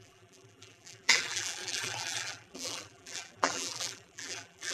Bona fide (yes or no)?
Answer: no